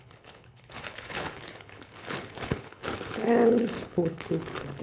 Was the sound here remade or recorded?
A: remade